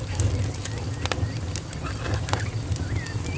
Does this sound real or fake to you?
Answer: real